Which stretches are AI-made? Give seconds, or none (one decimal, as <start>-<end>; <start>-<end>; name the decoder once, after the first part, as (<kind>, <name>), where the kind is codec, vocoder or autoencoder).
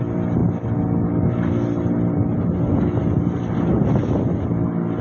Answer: none